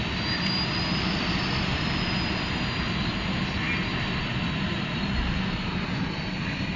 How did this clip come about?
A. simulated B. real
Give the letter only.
B